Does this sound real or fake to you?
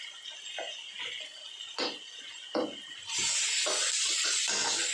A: real